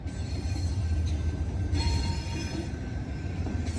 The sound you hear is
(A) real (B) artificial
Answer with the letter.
B